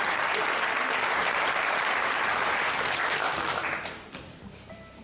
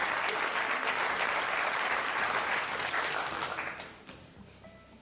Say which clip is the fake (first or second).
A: first